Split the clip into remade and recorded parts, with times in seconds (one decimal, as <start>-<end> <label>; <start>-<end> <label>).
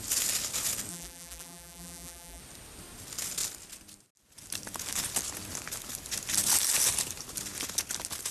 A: 0.0-0.9 recorded; 0.9-2.4 remade; 2.4-8.3 recorded